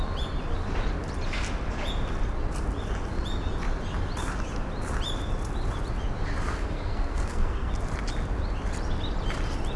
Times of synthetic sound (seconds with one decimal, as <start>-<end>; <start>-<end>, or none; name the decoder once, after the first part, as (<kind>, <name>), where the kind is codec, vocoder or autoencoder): 6.5-7.7 (codec, SNAC)